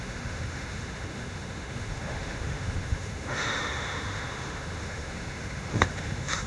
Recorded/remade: remade